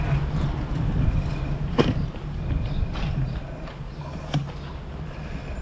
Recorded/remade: recorded